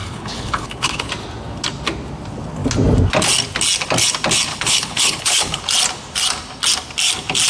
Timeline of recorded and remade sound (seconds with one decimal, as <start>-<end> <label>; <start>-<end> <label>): 0.0-1.1 remade; 1.1-4.5 recorded; 4.5-5.6 remade; 5.6-7.5 recorded